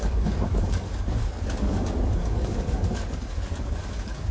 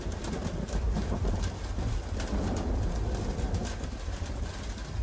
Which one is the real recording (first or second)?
second